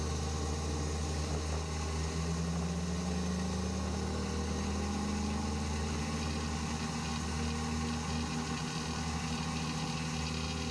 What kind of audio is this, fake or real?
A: real